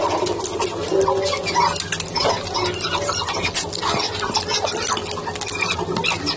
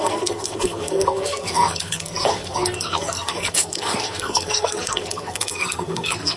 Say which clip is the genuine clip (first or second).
first